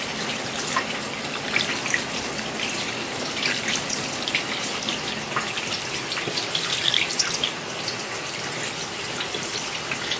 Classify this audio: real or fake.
real